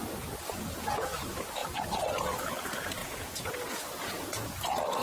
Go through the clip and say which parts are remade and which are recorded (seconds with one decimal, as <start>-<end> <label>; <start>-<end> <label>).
0.0-3.0 recorded; 3.0-3.5 remade; 3.5-5.0 recorded